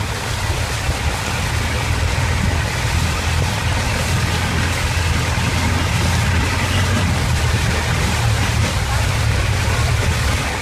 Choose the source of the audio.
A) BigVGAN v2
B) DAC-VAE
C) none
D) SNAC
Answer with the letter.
C